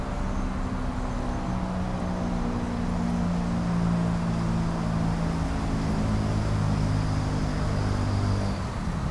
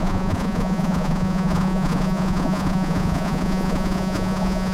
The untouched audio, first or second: first